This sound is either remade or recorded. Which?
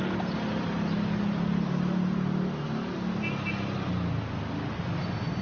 recorded